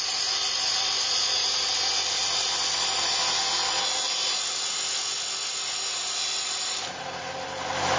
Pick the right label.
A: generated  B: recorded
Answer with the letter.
B